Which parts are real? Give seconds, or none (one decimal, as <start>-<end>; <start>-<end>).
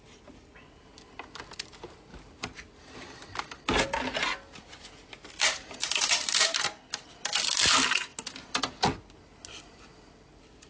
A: 0.0-10.7